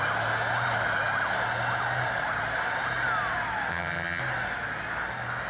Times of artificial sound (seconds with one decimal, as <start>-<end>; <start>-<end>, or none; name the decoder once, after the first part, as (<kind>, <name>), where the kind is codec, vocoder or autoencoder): 3.7-4.2 (vocoder, HiFi-GAN)

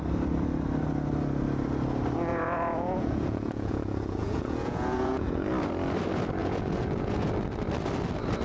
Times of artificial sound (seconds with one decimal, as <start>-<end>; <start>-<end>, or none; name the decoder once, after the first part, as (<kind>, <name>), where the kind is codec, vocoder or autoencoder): 2.3-5.5 (vocoder, Vocos); 6.4-7.3

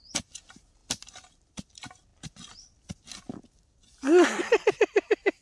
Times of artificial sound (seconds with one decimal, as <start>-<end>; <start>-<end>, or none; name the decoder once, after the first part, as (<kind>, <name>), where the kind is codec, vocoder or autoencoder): 0.0-0.8 (vocoder, BigVGAN v2); 1.7-2.1; 4.4-5.4

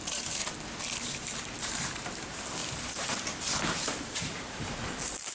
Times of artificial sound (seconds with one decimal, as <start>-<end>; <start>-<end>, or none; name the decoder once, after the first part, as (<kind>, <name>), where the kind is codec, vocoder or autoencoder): 0.0-0.4 (vocoder, BigVGAN v2); 1.0-5.3

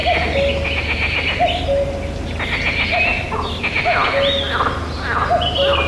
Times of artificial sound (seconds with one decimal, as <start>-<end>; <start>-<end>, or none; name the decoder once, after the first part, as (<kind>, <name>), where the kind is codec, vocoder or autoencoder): none

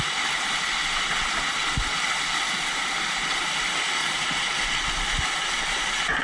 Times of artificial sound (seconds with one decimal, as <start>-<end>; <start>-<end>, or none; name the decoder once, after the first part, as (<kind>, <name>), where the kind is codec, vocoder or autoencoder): 4.0-4.9 (vocoder, Vocos)

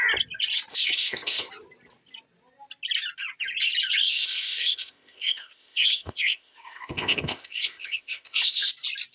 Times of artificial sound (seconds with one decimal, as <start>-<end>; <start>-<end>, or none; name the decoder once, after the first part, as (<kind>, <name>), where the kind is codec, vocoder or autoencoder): 0.7-1.5 (codec, ZipCodec); 4.0-8.7